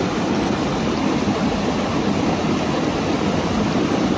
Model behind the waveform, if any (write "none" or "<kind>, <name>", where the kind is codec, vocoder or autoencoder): none